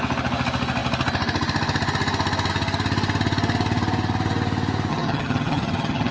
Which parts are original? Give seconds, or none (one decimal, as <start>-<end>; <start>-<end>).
0.0-4.9